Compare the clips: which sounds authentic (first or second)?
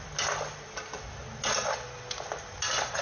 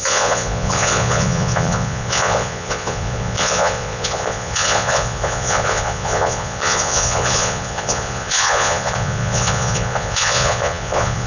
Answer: first